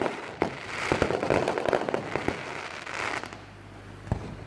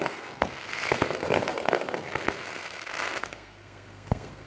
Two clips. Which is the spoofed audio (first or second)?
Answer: second